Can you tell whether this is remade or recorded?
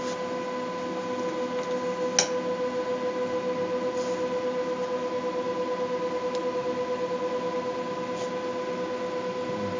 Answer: recorded